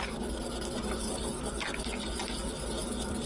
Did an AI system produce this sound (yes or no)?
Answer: no